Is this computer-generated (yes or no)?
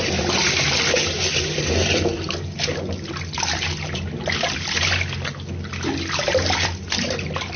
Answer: no